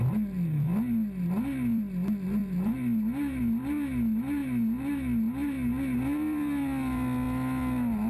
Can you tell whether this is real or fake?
real